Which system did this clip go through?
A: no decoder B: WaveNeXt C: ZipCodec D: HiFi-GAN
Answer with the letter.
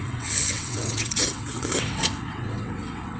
B